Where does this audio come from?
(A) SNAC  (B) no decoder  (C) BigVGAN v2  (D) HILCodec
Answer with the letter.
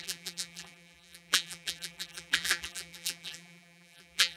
C